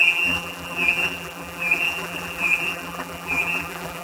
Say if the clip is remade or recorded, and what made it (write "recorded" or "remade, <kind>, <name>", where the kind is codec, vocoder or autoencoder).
remade, vocoder, BigVGAN v2